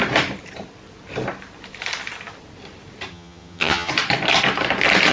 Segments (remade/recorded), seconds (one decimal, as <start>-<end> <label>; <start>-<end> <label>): 0.0-3.1 recorded; 3.1-3.9 remade; 3.9-5.1 recorded